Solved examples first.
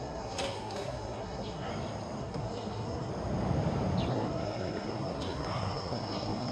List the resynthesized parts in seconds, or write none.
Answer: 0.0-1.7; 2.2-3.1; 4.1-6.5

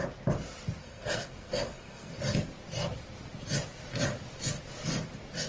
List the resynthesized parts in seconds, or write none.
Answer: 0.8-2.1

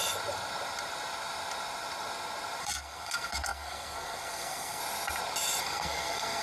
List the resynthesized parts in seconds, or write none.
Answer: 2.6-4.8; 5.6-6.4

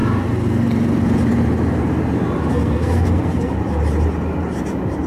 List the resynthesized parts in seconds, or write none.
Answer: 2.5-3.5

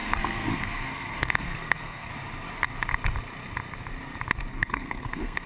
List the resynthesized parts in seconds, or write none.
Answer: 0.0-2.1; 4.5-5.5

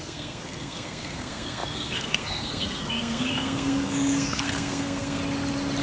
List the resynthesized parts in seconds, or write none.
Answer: 0.0-5.2

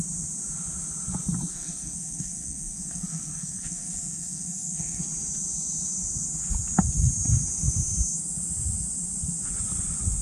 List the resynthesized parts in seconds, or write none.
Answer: 1.5-5.0

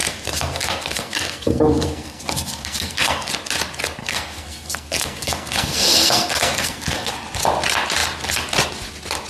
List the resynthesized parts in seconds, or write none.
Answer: 0.0-3.3; 4.0-7.1